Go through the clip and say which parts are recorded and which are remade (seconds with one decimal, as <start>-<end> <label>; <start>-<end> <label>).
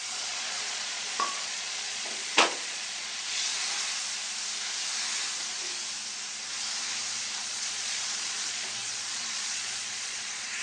0.0-3.5 remade; 3.5-7.4 recorded; 7.4-10.6 remade